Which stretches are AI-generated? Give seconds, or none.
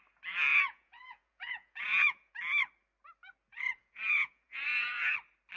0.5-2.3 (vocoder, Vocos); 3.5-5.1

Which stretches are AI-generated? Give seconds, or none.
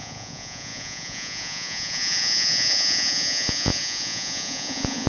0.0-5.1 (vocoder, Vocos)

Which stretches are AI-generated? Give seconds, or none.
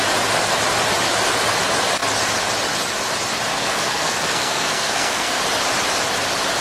3.5-5.4 (codec, SNAC)